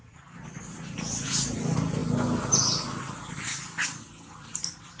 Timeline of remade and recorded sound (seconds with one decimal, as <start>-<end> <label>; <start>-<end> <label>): 0.0-5.0 recorded